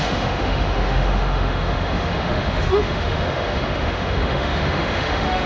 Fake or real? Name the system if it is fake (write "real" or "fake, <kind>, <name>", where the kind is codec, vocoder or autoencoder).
fake, autoencoder, DAC-VAE